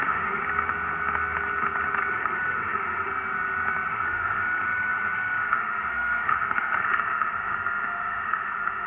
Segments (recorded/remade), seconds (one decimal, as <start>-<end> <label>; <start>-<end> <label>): 0.0-0.4 remade; 0.4-2.1 recorded; 2.1-3.1 remade; 3.1-3.9 recorded; 3.9-8.9 remade